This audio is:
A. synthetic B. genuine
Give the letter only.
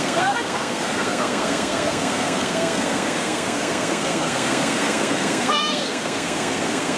A